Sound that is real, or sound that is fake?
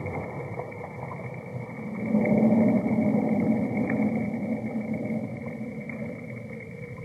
fake